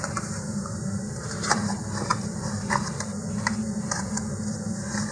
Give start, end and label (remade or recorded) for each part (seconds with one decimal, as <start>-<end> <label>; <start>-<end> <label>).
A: 0.0-5.1 remade